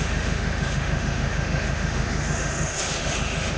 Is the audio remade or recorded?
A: remade